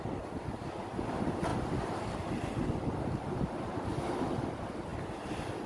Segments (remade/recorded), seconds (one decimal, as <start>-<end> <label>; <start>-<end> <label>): 0.0-5.7 recorded